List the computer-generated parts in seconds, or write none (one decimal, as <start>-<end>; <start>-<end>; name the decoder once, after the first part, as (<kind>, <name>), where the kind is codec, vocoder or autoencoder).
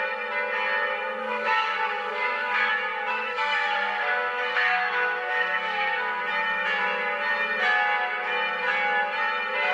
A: 1.2-2.7 (codec, SNAC); 3.1-6.2